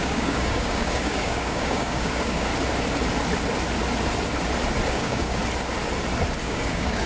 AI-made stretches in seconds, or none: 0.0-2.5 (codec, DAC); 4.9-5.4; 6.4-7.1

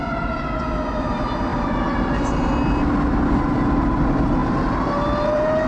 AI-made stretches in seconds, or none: 1.5-2.5 (vocoder, BigVGAN v2); 4.4-5.7

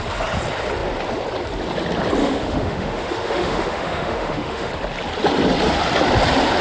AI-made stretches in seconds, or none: 2.2-4.7 (autoencoder, DAC-VAE)